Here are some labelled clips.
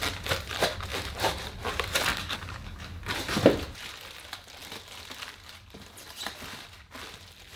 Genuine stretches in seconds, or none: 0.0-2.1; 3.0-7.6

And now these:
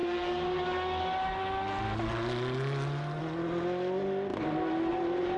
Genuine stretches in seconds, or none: 0.0-5.4

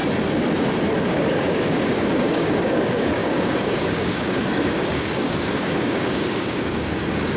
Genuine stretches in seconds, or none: 0.0-1.1

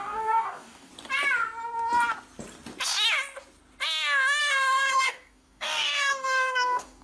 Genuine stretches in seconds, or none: 0.9-4.4

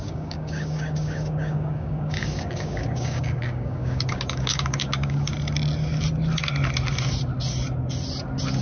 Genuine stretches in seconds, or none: 5.3-8.6

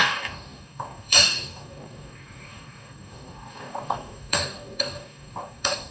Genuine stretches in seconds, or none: none

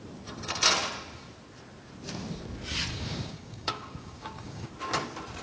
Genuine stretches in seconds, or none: 0.0-2.9; 4.7-5.4